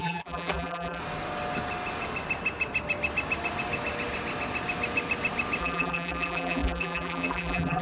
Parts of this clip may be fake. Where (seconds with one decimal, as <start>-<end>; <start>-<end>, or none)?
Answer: 0.0-1.0; 5.6-7.8